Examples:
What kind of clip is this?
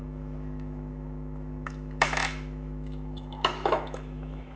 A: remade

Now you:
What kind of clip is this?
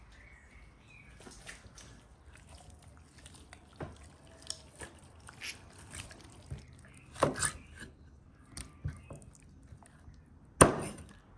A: recorded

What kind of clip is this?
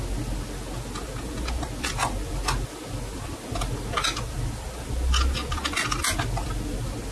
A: recorded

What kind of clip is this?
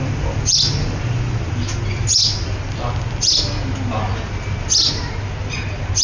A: recorded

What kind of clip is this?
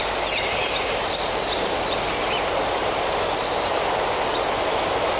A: remade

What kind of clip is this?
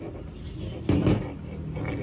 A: recorded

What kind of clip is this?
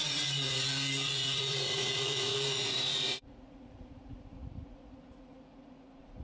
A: remade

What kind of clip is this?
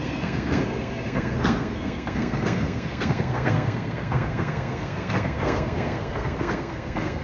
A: remade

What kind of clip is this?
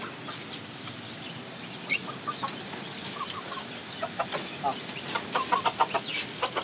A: recorded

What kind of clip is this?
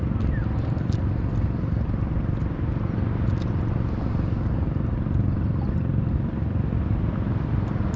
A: recorded